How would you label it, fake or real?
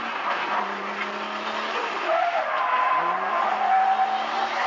real